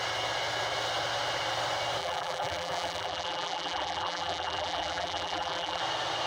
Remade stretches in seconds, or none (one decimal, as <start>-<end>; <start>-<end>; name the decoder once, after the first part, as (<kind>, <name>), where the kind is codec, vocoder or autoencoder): 2.0-5.8 (vocoder, BigVGAN v2)